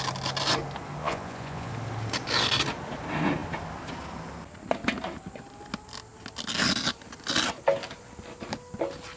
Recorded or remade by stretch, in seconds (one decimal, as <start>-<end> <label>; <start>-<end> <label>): 0.0-1.0 recorded; 1.0-1.7 remade; 1.7-9.2 recorded